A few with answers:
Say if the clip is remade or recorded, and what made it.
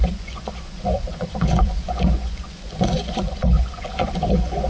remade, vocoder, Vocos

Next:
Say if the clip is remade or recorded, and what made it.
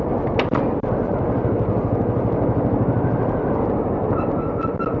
recorded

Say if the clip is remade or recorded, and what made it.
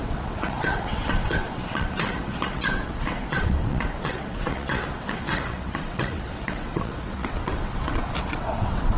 remade, vocoder, WaveNeXt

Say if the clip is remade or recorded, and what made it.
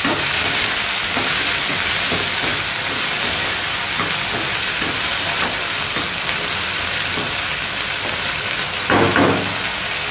recorded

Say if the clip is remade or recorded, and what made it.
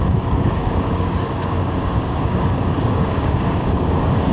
remade, codec, DAC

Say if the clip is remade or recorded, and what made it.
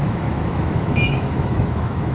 remade, autoencoder, DAC-VAE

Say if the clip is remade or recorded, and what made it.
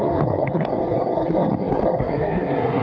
remade, codec, SNAC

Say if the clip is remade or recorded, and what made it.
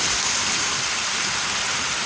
recorded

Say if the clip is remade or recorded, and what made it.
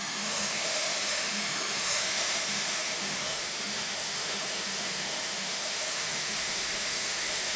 remade, autoencoder, DAC-VAE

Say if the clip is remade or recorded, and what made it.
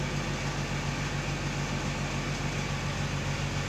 recorded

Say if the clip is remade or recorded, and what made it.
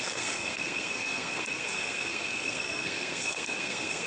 remade, codec, SNAC